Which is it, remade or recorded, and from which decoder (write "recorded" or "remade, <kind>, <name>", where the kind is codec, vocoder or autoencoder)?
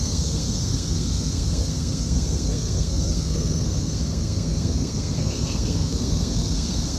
remade, codec, SNAC